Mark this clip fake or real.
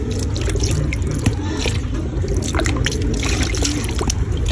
real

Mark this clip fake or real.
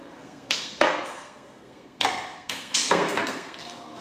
fake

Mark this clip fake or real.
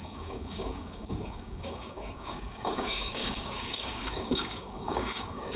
fake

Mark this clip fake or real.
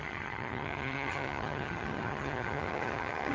fake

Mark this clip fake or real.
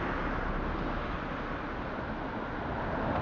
real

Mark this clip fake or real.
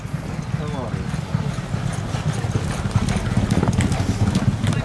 real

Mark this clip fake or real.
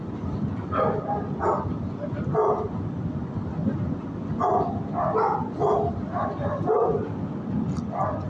real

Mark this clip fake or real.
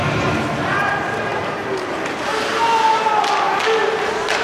real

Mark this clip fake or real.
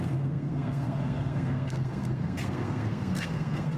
fake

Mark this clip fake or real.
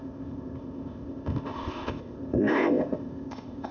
fake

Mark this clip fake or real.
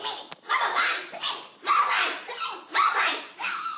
fake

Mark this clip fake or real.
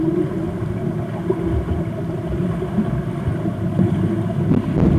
real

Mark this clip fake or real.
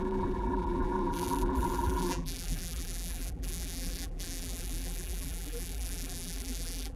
fake